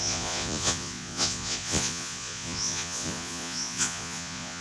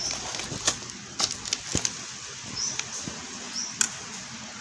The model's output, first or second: first